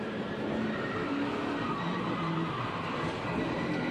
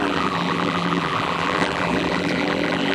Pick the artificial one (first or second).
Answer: second